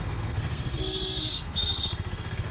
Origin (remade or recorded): remade